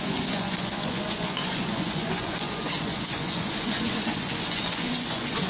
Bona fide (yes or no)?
no